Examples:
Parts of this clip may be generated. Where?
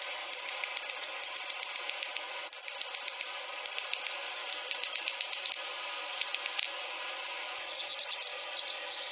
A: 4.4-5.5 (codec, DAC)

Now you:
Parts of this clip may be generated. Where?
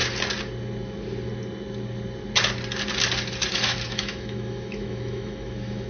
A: 3.5-5.9 (autoencoder, DAC-VAE)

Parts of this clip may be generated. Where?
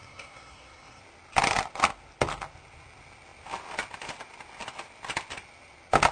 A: 0.0-1.0 (codec, SNAC)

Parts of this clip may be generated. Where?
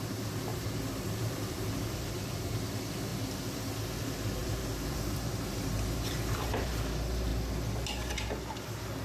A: 0.5-2.6 (vocoder, BigVGAN v2); 4.4-6.7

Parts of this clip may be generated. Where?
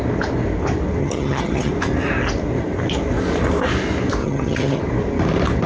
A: 1.0-1.7 (vocoder, HiFi-GAN); 4.2-4.8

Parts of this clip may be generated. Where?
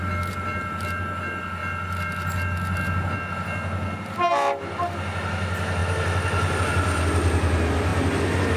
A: none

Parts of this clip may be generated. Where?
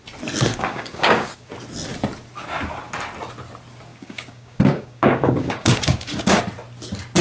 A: 0.5-1.5 (codec, DAC); 3.9-6.4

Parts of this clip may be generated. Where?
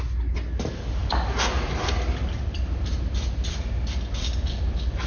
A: none